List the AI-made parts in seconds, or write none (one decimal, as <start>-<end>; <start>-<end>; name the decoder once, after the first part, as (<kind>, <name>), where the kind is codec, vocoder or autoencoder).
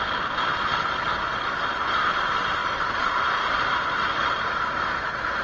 none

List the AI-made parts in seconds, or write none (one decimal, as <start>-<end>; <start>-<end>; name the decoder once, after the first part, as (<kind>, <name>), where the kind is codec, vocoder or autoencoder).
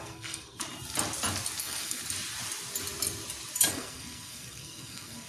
0.0-0.6 (codec, SNAC); 1.6-2.0; 3.7-5.3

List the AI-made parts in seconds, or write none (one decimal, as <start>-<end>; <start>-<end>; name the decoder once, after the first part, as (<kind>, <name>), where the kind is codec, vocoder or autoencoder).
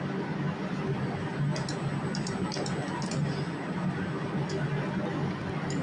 none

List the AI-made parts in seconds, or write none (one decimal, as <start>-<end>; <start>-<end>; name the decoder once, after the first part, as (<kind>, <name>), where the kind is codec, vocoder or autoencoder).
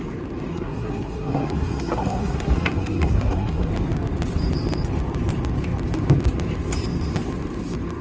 0.5-3.7 (codec, SNAC)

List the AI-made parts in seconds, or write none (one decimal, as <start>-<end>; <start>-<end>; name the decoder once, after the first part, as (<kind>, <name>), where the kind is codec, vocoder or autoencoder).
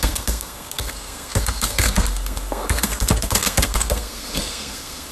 0.0-5.1 (codec, SNAC)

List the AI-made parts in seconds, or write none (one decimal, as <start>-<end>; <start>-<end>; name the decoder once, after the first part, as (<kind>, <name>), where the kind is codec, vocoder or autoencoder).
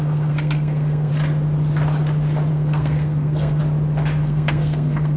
0.0-1.1 (codec, SNAC); 2.5-3.6; 4.2-5.2